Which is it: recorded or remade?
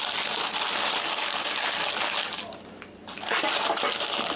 recorded